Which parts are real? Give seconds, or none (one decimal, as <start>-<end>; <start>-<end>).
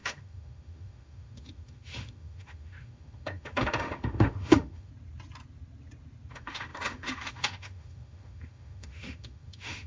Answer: 4.9-6.3